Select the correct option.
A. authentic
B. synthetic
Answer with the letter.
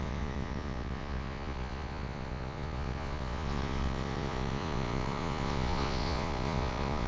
B